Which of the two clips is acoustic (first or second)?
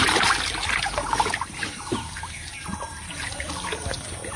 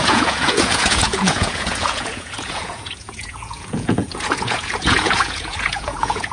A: first